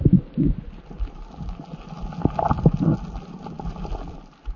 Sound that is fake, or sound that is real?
real